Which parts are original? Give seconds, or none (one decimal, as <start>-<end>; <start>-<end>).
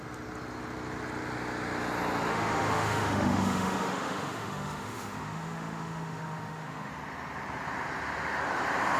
0.0-2.3; 6.9-9.0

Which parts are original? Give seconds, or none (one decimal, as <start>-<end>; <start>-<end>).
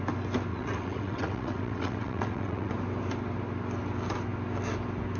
0.0-0.5; 2.7-5.2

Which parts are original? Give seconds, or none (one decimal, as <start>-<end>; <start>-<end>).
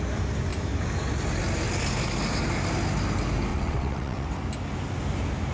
0.0-3.5; 4.3-5.5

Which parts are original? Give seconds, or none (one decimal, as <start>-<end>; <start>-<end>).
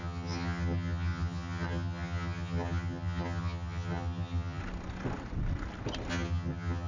4.6-6.1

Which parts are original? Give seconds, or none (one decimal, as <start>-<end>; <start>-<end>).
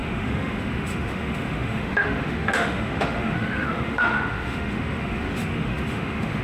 none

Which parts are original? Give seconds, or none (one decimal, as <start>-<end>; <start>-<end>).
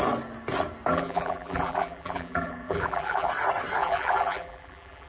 0.0-0.9; 3.3-3.8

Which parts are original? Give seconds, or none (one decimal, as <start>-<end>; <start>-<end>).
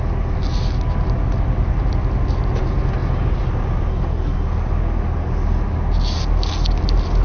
0.0-7.2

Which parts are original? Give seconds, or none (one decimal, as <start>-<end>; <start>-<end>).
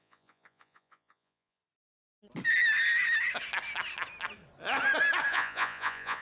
1.6-5.3